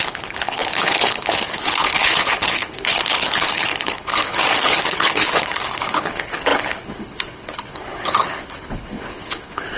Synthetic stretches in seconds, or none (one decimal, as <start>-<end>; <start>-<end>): 0.0-9.8

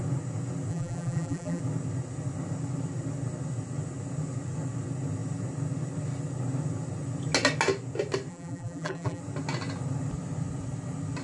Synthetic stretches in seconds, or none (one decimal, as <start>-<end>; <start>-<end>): 0.7-1.6; 8.3-9.2

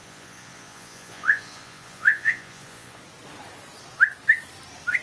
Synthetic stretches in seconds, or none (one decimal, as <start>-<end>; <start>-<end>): 0.0-3.0